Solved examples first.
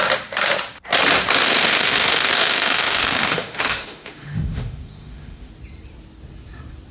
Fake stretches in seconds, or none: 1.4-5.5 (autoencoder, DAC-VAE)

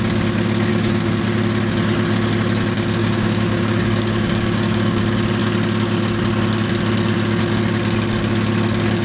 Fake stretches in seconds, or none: 0.7-1.2 (codec, DAC); 3.0-5.0

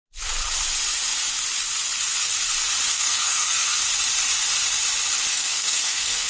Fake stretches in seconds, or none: 2.9-3.8 (codec, SNAC); 5.3-6.3

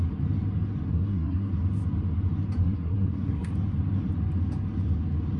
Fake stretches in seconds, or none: 0.9-1.5 (codec, SNAC); 2.6-3.5